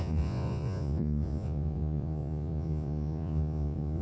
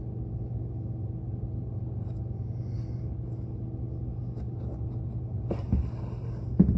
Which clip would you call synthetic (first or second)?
first